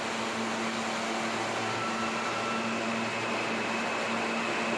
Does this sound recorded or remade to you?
recorded